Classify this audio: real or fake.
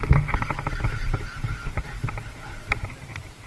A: real